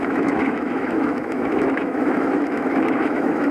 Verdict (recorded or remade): remade